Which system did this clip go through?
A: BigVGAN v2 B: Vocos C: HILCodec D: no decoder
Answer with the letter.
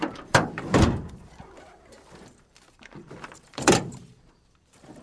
A